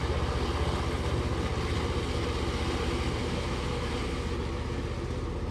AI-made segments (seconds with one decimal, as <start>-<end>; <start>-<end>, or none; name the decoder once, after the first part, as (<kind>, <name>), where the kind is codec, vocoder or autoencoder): 3.2-3.9 (autoencoder, DAC-VAE)